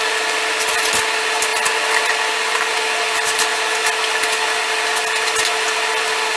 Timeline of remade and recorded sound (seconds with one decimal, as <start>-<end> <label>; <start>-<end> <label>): 0.0-6.4 recorded